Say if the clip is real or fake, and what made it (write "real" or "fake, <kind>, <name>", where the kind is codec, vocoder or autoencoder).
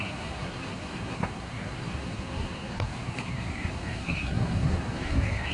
fake, codec, SNAC